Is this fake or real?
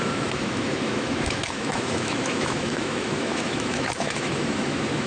fake